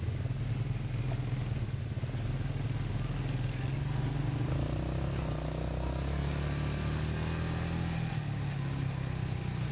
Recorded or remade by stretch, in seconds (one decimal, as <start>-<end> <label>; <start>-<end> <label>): 0.0-9.7 recorded